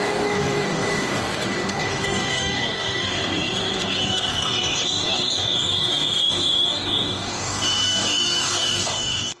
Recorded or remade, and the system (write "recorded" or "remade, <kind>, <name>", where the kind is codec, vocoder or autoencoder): remade, codec, DAC